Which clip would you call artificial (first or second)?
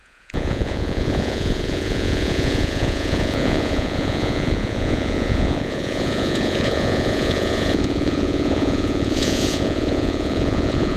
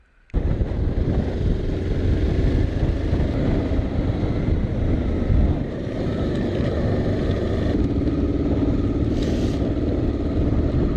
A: first